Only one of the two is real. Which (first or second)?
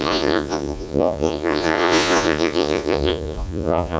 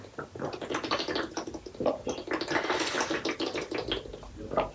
second